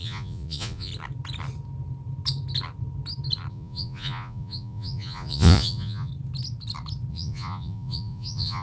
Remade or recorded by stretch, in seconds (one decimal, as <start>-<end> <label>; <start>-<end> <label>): 0.0-0.9 remade; 0.9-3.5 recorded; 3.5-6.1 remade; 6.1-7.1 recorded; 7.1-8.6 remade

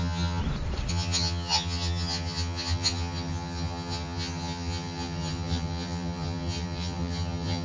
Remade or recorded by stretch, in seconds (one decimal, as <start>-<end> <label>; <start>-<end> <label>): 0.0-0.4 remade; 0.4-0.9 recorded; 0.9-7.6 remade